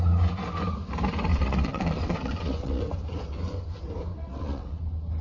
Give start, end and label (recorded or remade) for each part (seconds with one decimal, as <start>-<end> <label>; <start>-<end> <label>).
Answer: 0.0-1.3 recorded; 1.3-2.8 remade; 2.8-4.1 recorded; 4.1-4.8 remade; 4.8-5.2 recorded